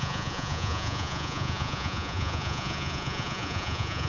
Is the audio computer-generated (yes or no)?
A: yes